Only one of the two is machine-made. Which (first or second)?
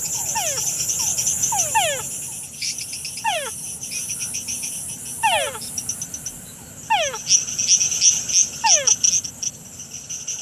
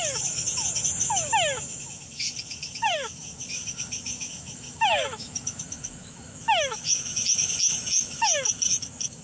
second